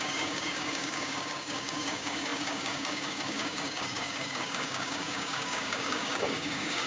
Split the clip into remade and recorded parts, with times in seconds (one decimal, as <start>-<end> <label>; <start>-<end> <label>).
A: 0.0-6.9 remade